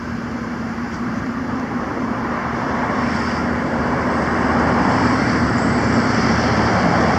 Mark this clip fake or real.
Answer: fake